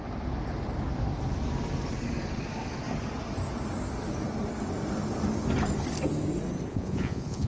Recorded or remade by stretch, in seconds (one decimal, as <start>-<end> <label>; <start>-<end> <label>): 0.0-6.7 recorded; 6.7-7.5 remade